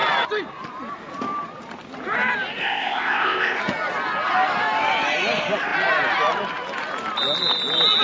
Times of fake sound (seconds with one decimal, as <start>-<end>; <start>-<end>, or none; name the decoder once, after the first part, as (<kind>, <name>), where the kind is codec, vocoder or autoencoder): 2.6-3.6 (codec, ZipCodec)